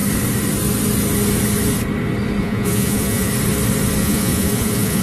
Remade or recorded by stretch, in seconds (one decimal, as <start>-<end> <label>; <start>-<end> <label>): 0.0-2.4 recorded; 2.4-3.3 remade; 3.3-4.0 recorded; 4.0-5.0 remade